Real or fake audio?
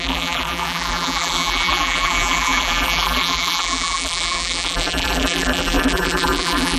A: fake